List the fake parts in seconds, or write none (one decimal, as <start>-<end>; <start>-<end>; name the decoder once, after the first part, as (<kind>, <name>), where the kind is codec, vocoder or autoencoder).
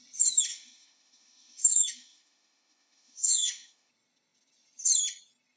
0.5-3.9 (autoencoder, DAC-VAE)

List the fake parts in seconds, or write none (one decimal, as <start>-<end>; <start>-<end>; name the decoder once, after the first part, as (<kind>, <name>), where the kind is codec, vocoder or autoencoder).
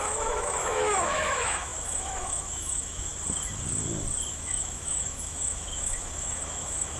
0.0-3.1 (autoencoder, DAC-VAE); 4.3-7.0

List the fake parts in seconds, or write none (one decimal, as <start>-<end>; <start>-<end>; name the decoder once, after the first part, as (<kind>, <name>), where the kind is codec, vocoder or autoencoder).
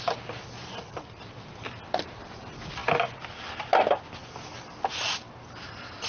none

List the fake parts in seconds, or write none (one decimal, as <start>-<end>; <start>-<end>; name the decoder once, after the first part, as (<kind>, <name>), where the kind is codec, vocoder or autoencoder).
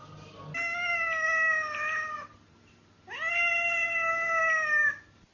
none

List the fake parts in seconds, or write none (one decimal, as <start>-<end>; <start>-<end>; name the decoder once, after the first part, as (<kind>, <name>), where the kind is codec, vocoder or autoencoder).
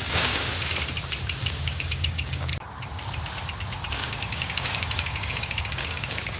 0.0-0.5 (codec, DAC); 1.4-2.5; 3.9-6.4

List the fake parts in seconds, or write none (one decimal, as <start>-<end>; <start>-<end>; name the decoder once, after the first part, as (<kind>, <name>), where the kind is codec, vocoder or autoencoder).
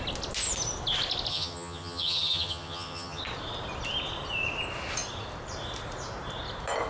1.3-3.2 (vocoder, HiFi-GAN)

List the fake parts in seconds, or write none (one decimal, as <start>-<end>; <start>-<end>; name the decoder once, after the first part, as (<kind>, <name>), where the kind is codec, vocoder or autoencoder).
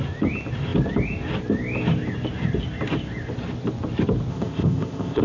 4.3-5.2 (codec, ZipCodec)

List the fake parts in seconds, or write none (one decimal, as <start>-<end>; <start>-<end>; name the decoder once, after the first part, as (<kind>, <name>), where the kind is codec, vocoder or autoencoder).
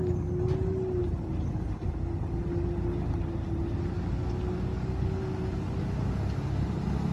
4.7-5.2 (codec, DAC)